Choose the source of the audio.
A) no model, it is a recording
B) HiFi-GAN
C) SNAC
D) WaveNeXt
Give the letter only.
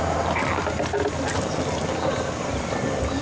A